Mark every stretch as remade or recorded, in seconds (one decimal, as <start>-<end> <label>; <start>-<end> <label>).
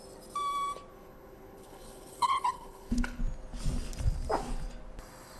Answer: 0.0-0.9 recorded; 0.9-3.2 remade; 3.2-5.4 recorded